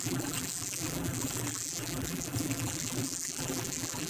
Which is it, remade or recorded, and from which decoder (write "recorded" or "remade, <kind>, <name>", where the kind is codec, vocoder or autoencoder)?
remade, vocoder, BigVGAN v2